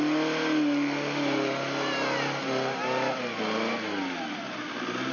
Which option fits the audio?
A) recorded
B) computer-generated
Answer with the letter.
A